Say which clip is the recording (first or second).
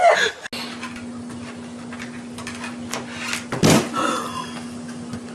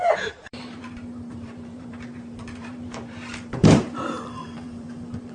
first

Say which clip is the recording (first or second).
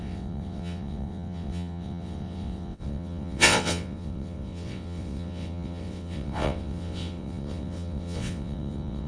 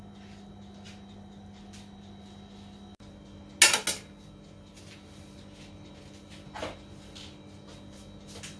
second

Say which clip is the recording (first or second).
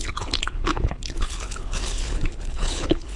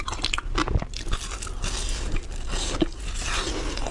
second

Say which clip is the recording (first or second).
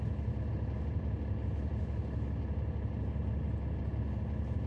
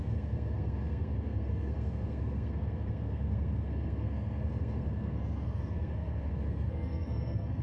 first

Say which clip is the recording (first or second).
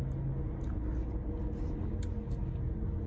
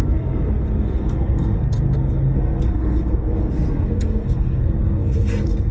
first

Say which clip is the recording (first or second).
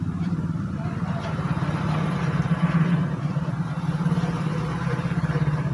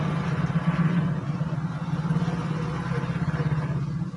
second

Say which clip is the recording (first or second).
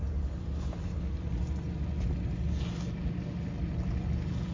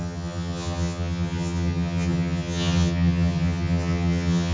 first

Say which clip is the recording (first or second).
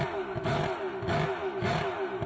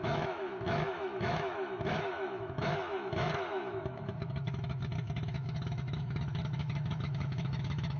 first